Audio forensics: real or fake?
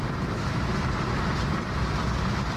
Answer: real